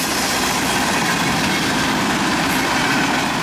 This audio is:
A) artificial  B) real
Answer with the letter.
A